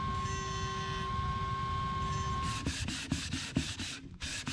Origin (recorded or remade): recorded